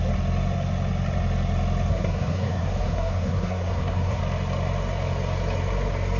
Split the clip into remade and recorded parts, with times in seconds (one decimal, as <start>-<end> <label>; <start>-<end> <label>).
0.0-1.9 recorded; 1.9-4.2 remade; 4.2-6.2 recorded